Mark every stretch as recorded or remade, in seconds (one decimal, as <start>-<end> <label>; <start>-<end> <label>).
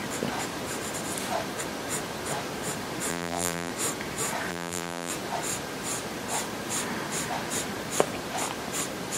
0.0-3.1 recorded; 3.1-3.7 remade; 3.7-4.5 recorded; 4.5-5.1 remade; 5.1-9.2 recorded